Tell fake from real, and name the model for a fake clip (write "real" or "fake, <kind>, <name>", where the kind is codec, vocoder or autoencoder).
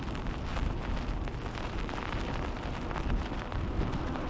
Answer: real